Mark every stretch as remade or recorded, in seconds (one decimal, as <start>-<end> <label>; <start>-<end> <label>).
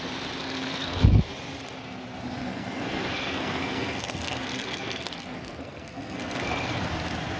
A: 0.0-0.4 recorded; 0.4-1.2 remade; 1.2-2.4 recorded; 2.4-6.8 remade; 6.8-7.4 recorded